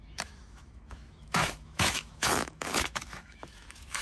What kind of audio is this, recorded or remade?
remade